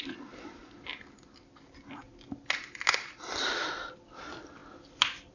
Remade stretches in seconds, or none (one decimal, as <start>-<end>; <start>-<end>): none